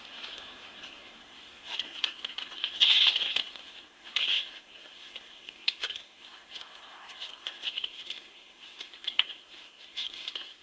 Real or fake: fake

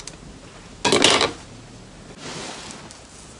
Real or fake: real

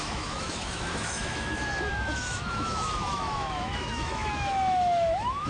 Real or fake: fake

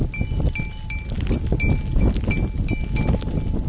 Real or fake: real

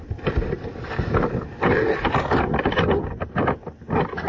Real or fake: real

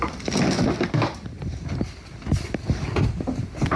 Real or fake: real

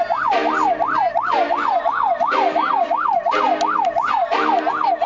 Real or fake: real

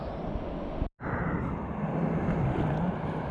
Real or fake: real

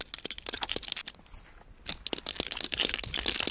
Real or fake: real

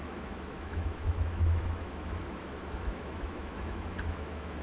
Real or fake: fake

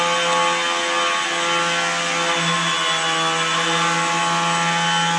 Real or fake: real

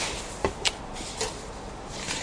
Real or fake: real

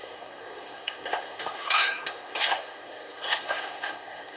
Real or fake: fake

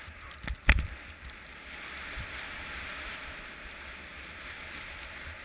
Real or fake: real